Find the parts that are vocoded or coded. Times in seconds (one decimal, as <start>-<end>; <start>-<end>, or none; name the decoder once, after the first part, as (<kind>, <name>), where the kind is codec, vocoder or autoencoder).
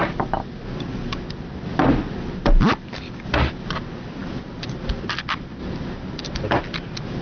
none